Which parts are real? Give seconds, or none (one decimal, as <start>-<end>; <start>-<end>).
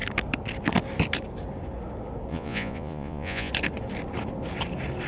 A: 0.0-2.3; 3.5-5.1